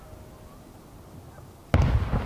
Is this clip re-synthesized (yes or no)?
no